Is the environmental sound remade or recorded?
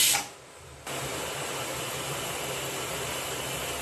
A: recorded